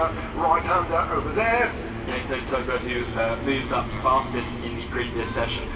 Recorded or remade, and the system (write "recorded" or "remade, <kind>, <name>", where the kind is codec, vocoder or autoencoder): recorded